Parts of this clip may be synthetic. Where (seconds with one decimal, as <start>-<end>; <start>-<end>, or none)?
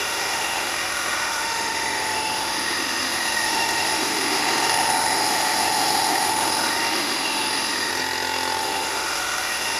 0.0-7.9; 8.6-9.8